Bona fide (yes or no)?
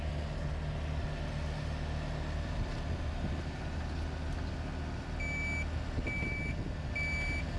yes